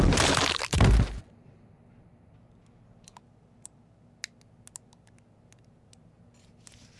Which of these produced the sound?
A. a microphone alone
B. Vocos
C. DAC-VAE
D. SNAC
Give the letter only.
A